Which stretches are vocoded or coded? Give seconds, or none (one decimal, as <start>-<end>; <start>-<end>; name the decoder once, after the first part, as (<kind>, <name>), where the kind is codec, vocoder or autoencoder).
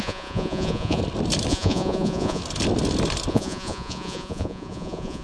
0.0-1.0 (vocoder, Vocos); 1.5-2.4; 3.3-5.2